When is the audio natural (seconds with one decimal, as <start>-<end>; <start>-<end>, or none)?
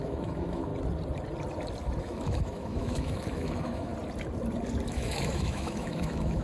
0.7-2.0; 3.9-4.9